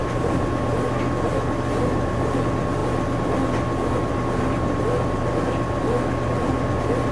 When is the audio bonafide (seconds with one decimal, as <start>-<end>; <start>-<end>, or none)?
0.5-7.1